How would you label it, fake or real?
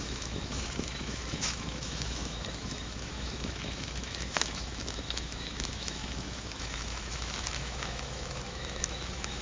fake